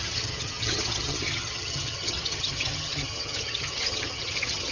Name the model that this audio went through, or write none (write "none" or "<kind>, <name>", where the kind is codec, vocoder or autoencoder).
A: vocoder, HiFi-GAN